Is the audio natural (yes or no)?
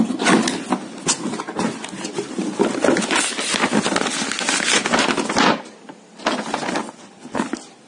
yes